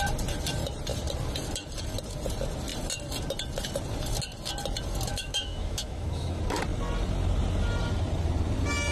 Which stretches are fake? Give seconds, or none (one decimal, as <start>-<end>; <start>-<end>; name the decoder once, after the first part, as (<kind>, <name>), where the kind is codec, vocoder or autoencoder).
5.1-6.4 (autoencoder, DAC-VAE)

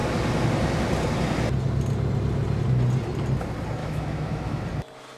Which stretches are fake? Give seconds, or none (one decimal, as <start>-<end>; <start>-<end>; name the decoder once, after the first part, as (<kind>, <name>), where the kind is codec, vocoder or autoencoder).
3.8-4.6 (autoencoder, DAC-VAE)

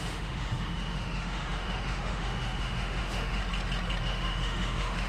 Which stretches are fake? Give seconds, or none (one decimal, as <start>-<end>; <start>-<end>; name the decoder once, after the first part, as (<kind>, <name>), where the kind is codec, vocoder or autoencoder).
0.0-3.4 (autoencoder, DAC-VAE); 4.0-5.1

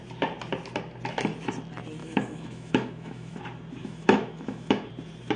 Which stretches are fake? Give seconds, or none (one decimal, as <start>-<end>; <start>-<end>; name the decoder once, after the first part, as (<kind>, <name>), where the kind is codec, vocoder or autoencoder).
2.0-3.4 (autoencoder, DAC-VAE); 3.8-4.9